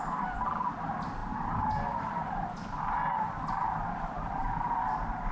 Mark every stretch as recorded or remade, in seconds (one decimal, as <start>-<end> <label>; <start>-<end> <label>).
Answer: 0.0-5.3 recorded